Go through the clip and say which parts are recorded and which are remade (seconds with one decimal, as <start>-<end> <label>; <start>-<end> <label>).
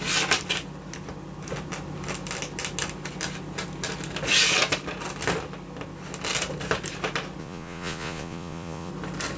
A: 0.0-7.4 recorded; 7.4-8.9 remade; 8.9-9.4 recorded